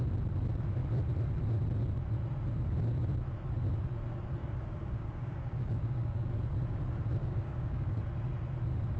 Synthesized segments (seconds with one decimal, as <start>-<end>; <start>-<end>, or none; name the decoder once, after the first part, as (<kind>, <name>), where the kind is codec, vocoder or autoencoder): 4.4-6.3 (codec, DAC); 7.2-8.0